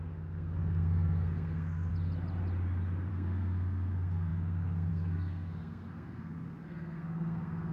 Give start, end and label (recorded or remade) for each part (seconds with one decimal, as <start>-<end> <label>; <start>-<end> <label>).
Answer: 0.0-1.9 remade; 1.9-3.1 recorded; 3.1-7.7 remade